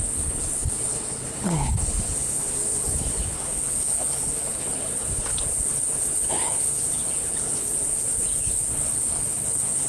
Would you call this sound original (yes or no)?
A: no